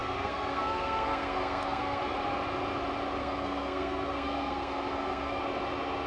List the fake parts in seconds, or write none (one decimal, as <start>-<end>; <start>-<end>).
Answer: 0.0-2.0; 3.2-5.4